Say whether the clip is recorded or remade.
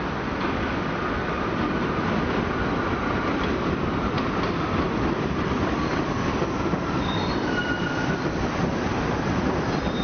remade